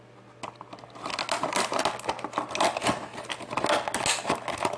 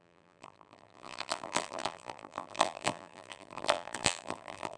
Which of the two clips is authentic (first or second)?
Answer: first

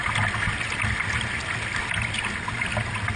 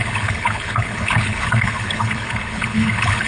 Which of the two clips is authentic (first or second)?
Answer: first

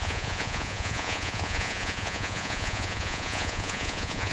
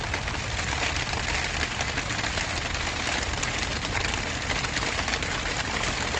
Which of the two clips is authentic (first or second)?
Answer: second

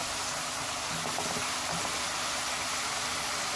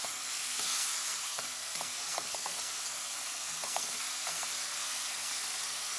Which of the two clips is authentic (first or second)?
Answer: first